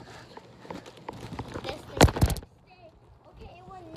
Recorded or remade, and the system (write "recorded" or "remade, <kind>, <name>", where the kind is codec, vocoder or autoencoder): recorded